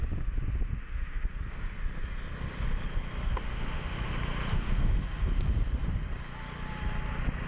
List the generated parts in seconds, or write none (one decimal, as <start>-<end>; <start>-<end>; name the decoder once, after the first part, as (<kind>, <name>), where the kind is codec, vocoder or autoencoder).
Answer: 0.7-1.3 (autoencoder, DAC-VAE); 3.3-4.1; 4.5-5.3